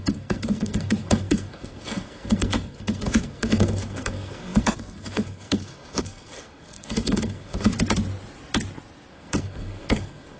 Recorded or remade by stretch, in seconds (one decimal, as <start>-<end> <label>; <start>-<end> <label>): 0.0-7.7 remade; 7.7-9.1 recorded; 9.1-10.4 remade